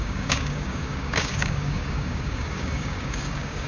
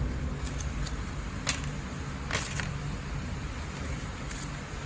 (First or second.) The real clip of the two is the second